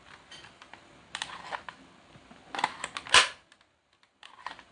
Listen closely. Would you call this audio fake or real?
real